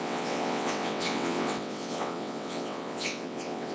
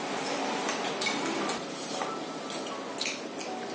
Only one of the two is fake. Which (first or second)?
first